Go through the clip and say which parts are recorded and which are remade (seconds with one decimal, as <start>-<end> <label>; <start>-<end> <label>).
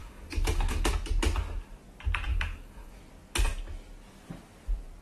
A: 0.0-0.9 remade; 0.9-2.3 recorded; 2.3-3.0 remade; 3.0-5.0 recorded